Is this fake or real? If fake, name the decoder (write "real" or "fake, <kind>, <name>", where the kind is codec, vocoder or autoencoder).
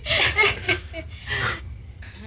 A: real